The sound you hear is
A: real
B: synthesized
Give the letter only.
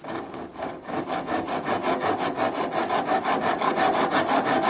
A